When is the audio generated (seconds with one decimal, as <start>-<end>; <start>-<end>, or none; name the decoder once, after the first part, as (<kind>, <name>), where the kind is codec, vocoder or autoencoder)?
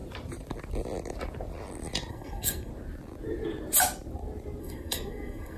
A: 2.1-2.7 (codec, SNAC); 4.6-5.6